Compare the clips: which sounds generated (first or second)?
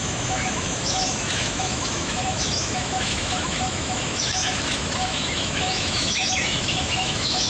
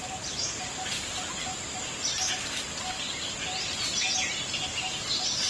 first